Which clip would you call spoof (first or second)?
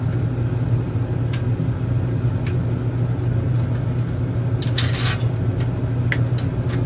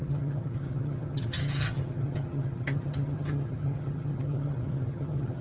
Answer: second